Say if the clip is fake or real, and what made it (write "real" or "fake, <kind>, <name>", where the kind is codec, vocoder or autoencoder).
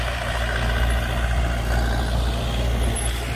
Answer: real